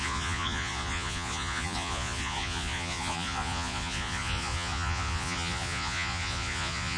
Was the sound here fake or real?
fake